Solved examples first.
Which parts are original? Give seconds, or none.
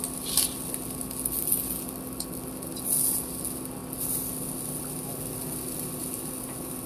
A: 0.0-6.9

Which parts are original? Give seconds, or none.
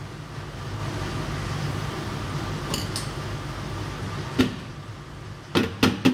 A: 0.0-6.1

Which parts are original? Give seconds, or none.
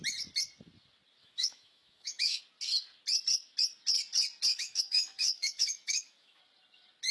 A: 0.0-1.2; 2.4-4.5; 6.4-7.1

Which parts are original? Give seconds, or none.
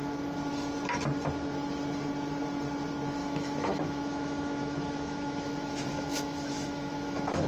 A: 0.0-3.2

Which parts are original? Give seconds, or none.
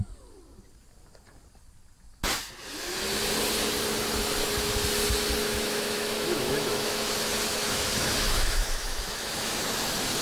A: 0.0-5.4; 7.1-7.5; 9.5-10.2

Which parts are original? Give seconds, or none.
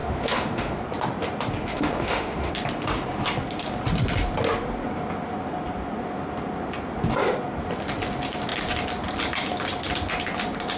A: 0.8-1.7; 2.5-10.8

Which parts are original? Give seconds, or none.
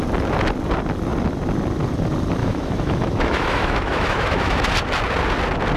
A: 0.0-2.4; 4.7-5.8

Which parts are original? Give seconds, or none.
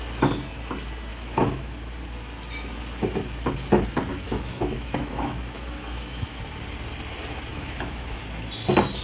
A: 0.0-1.1; 2.0-4.1; 6.4-7.5; 8.2-9.0